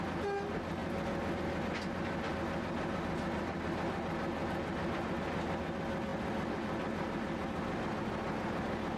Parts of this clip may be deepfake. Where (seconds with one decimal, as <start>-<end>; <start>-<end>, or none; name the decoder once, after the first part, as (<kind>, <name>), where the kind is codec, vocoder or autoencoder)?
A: none